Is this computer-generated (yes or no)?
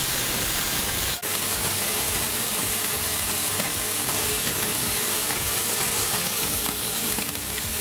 yes